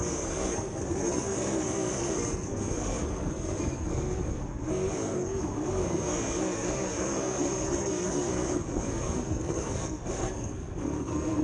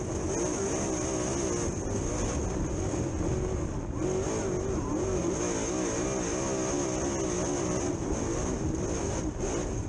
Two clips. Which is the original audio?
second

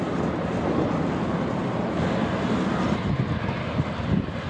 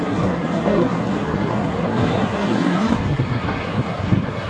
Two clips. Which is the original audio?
first